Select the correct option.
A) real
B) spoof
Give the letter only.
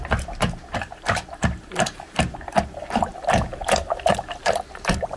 B